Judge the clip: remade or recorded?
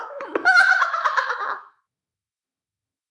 remade